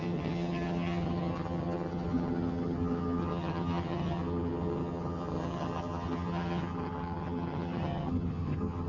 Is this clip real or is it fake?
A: fake